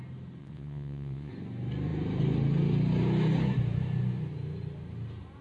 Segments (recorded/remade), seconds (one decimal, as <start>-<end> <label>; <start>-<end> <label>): 0.0-0.4 recorded; 0.4-1.3 remade; 1.3-5.4 recorded